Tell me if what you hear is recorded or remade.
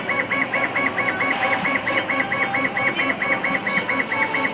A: recorded